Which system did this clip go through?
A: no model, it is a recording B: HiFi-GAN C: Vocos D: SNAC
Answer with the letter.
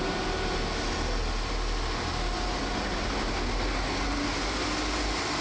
A